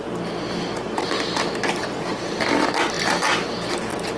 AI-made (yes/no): no